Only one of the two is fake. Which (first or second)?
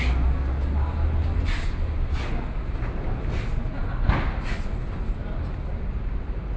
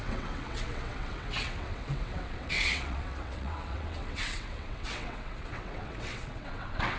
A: second